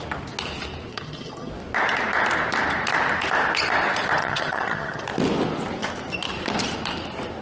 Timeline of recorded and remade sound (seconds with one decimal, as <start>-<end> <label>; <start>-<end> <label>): 0.0-0.9 recorded; 0.9-1.5 remade; 1.5-4.2 recorded; 4.2-5.0 remade; 5.0-7.4 recorded